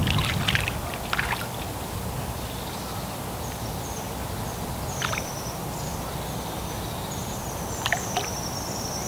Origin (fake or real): real